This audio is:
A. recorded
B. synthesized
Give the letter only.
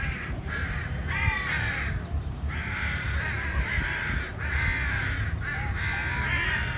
A